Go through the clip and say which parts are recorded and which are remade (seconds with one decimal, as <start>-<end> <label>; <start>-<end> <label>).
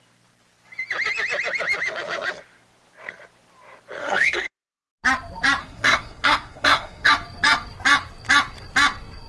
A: 0.0-4.0 recorded; 4.0-4.9 remade; 4.9-5.6 recorded; 5.6-7.1 remade; 7.1-9.3 recorded